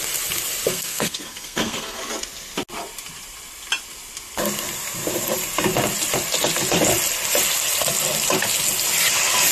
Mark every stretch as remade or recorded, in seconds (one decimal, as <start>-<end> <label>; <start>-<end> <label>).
0.0-0.7 recorded; 0.7-2.0 remade; 2.0-9.5 recorded